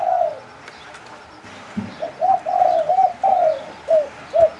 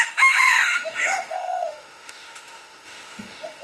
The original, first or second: first